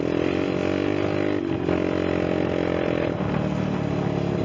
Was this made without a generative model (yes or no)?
yes